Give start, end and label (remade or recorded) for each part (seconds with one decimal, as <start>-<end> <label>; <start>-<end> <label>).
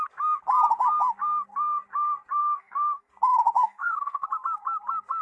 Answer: 0.0-2.4 recorded; 2.4-3.1 remade; 3.1-3.6 recorded; 3.6-4.3 remade; 4.3-5.2 recorded